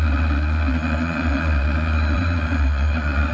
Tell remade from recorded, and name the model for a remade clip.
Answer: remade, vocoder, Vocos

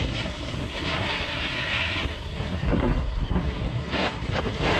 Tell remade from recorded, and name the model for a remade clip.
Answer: remade, codec, SNAC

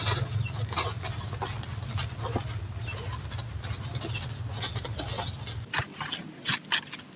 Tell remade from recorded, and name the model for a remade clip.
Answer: recorded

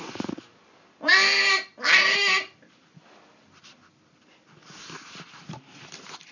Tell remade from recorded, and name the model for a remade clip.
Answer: remade, vocoder, BigVGAN v2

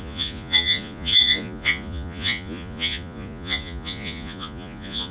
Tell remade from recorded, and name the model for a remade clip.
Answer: remade, vocoder, Vocos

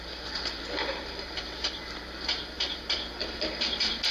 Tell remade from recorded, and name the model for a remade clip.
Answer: remade, vocoder, BigVGAN v2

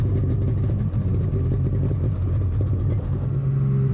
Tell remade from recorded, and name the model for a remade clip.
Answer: recorded